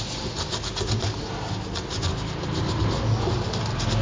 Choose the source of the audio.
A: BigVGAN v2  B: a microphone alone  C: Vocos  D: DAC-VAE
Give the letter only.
B